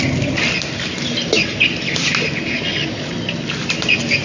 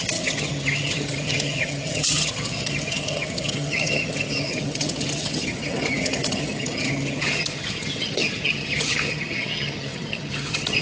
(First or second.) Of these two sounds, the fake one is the second